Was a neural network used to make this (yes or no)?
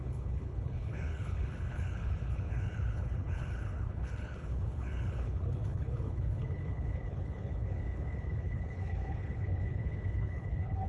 yes